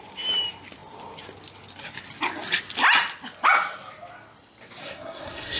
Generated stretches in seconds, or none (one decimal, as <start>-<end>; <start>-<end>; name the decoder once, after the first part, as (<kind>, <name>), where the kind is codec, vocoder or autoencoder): 4.8-5.6 (codec, SNAC)